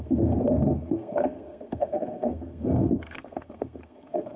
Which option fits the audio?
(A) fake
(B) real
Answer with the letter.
A